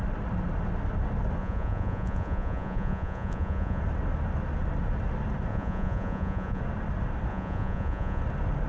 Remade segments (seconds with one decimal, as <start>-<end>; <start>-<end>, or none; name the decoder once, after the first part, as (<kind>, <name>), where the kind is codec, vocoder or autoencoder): 1.4-3.8 (vocoder, Vocos); 5.5-6.6; 7.3-8.2